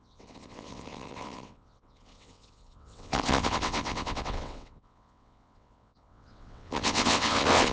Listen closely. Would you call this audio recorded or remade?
remade